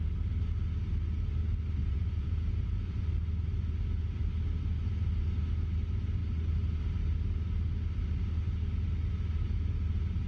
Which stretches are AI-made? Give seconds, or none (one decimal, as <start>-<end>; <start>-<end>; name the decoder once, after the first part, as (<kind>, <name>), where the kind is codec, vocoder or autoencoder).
1.8-3.0 (vocoder, Vocos)